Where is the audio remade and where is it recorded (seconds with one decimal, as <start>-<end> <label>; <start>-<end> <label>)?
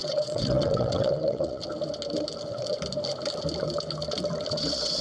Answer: 0.0-1.6 remade; 1.6-4.5 recorded; 4.5-5.0 remade